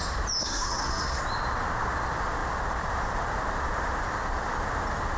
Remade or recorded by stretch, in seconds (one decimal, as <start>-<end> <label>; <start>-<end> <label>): 0.0-0.4 recorded; 0.4-1.2 remade; 1.2-5.2 recorded